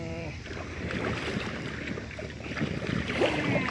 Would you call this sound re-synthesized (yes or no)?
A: yes